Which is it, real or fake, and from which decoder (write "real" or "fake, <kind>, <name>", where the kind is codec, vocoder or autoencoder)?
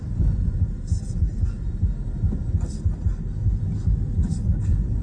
real